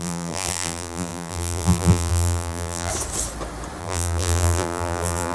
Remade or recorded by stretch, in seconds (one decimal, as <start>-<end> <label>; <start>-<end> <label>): 0.0-2.9 remade; 2.9-3.8 recorded; 3.8-5.3 remade